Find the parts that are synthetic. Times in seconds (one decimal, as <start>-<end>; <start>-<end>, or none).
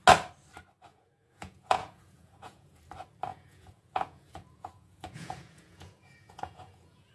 0.9-2.8; 3.3-7.1